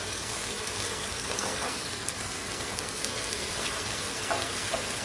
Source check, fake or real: fake